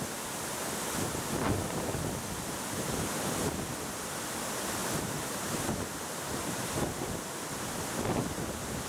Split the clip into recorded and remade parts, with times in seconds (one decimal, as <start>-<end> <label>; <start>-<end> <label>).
0.0-4.8 recorded; 4.8-5.7 remade; 5.7-8.9 recorded